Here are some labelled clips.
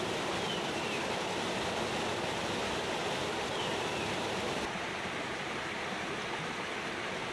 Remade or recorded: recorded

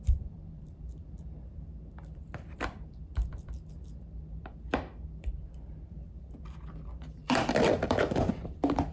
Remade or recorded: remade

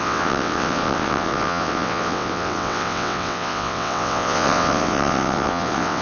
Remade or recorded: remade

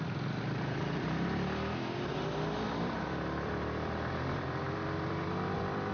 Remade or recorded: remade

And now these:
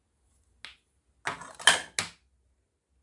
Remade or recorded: recorded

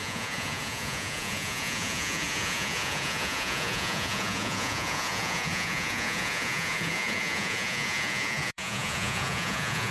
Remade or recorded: remade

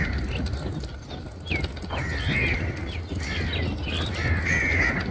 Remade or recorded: recorded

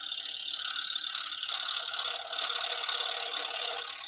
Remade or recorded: recorded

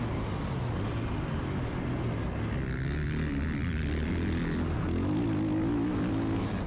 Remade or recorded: recorded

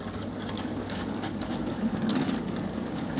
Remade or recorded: remade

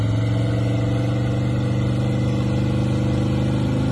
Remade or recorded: recorded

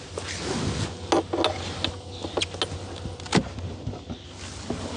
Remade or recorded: recorded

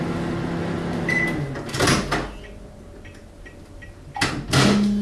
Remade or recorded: recorded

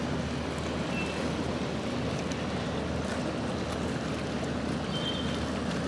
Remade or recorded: recorded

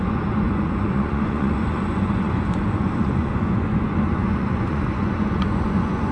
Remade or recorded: remade